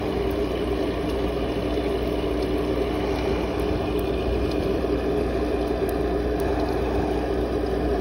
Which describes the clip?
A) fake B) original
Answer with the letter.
B